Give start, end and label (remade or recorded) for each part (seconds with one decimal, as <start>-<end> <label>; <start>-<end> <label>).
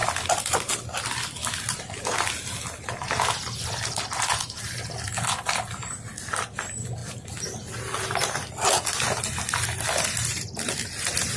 0.0-11.4 recorded